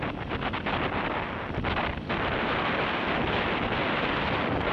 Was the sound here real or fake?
real